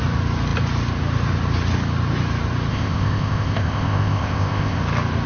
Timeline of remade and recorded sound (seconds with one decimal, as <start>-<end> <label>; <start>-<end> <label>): 0.0-2.7 recorded; 2.7-4.8 remade; 4.8-5.3 recorded